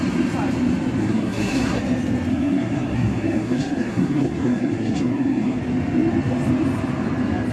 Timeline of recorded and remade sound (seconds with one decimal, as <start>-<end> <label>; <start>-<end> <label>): 0.0-1.0 recorded; 1.0-1.8 remade; 1.8-2.3 recorded; 2.3-5.6 remade; 5.6-7.5 recorded